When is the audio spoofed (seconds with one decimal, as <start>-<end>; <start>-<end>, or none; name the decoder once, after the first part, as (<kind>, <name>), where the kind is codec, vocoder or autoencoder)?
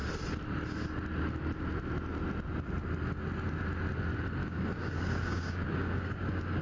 4.4-6.6 (codec, DAC)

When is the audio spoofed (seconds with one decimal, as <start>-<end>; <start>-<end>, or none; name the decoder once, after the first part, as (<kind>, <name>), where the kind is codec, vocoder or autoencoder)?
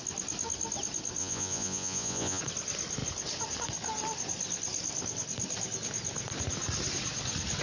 1.2-2.4 (vocoder, Vocos)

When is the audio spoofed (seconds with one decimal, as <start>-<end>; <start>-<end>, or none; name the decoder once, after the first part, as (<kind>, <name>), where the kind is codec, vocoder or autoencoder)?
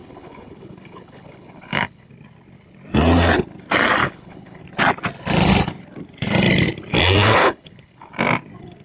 0.0-2.1 (codec, HILCodec); 4.0-4.6; 7.4-8.1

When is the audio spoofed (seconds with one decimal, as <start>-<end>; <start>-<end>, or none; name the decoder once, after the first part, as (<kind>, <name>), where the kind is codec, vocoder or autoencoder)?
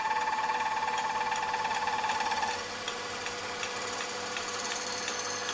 1.7-5.0 (vocoder, BigVGAN v2)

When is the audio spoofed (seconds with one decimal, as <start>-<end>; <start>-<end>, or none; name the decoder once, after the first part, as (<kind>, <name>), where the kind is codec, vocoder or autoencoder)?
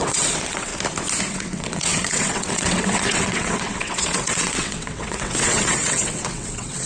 0.0-0.7 (vocoder, WaveNeXt); 1.3-6.9